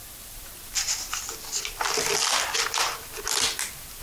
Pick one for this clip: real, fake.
fake